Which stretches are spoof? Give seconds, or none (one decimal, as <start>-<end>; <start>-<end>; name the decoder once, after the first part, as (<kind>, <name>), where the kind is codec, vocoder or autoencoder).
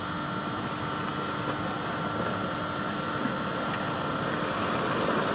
none